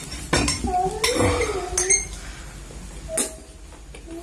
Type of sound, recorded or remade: recorded